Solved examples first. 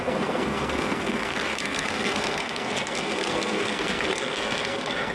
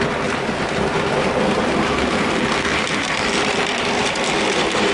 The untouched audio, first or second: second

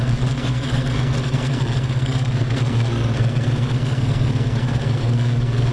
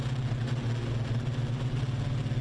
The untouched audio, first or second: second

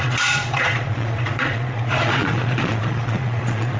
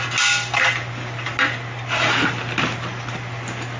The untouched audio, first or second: second